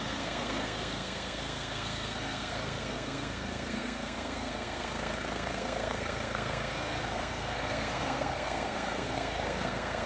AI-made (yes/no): yes